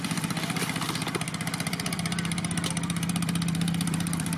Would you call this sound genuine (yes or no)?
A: no